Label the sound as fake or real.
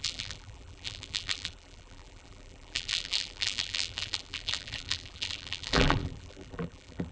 fake